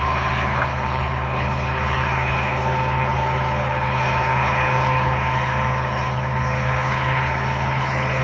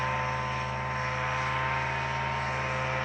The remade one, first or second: first